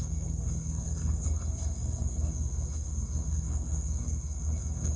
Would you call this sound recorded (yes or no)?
no